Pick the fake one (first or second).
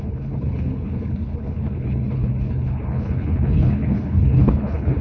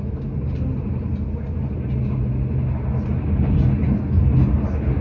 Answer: first